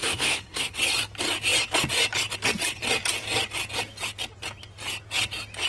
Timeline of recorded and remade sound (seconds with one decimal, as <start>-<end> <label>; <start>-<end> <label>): 0.0-0.8 remade; 0.8-5.7 recorded